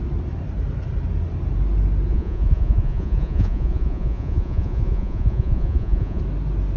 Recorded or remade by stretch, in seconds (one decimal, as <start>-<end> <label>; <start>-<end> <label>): 0.0-2.1 recorded; 2.1-6.2 remade; 6.2-6.8 recorded